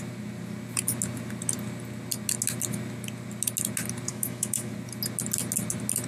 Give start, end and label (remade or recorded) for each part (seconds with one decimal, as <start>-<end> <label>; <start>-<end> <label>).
0.0-4.1 recorded; 4.1-4.7 remade; 4.7-6.1 recorded